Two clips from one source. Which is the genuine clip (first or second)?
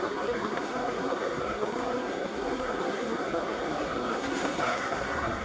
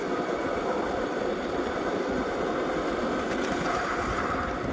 second